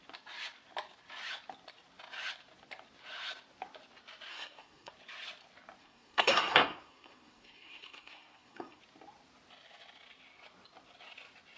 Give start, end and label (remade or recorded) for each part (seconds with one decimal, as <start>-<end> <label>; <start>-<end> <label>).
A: 0.0-4.3 recorded; 4.3-4.9 remade; 4.9-5.8 recorded; 5.8-8.8 remade; 8.8-11.6 recorded